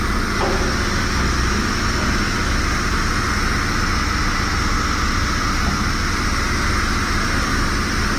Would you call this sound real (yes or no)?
yes